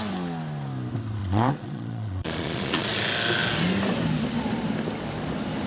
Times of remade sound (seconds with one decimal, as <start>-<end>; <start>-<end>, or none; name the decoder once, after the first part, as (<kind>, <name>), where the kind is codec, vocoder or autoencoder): 1.2-3.0 (vocoder, Vocos)